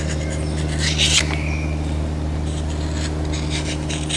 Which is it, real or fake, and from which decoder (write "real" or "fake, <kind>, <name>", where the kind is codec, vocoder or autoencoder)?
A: real